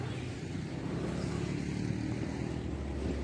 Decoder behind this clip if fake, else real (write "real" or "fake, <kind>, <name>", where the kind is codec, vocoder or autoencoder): real